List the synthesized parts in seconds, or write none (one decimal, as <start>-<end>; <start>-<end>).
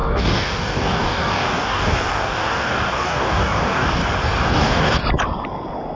0.0-4.0; 4.5-5.0